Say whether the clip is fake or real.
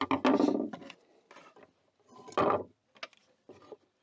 real